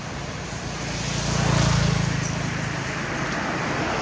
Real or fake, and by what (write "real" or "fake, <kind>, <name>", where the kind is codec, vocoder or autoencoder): real